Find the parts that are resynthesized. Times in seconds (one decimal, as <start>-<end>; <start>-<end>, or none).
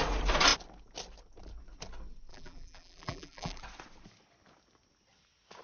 2.3-3.6